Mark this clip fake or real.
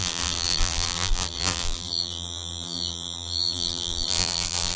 fake